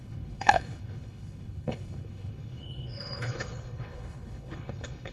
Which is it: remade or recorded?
remade